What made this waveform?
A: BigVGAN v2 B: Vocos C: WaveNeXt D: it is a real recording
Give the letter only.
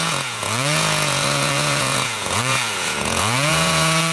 B